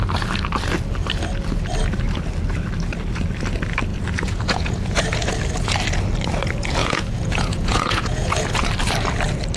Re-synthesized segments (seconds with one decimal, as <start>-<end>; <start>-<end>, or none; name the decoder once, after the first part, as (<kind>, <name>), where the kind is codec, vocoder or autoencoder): 3.9-5.3 (vocoder, Vocos); 6.8-8.7

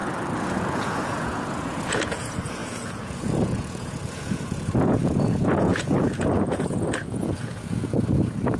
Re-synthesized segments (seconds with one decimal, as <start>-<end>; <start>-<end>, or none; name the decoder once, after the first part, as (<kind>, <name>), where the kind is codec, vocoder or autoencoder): 0.5-8.6 (vocoder, Vocos)

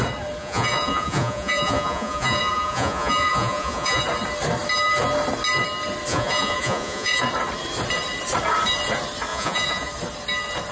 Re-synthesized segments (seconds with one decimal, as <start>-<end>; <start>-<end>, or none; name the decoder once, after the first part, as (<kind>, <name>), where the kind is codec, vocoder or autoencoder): 0.4-4.0 (vocoder, Vocos); 6.1-7.2; 9.3-9.9

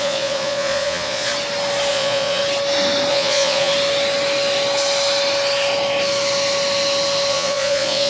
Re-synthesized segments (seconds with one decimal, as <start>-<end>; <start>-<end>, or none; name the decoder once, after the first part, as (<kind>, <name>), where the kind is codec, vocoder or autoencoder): 0.0-1.3 (vocoder, Vocos); 1.9-2.4; 3.1-3.7; 7.3-8.1

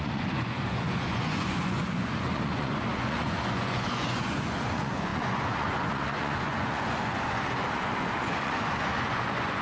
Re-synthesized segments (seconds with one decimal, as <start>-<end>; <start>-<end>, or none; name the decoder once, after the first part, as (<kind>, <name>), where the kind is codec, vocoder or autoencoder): 0.0-9.6 (vocoder, Vocos)

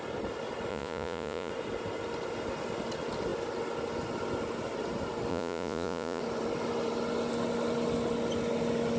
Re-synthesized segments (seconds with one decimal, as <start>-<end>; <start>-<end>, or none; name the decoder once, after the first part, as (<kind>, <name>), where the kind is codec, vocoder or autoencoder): 0.7-1.5 (vocoder, Vocos); 5.3-6.2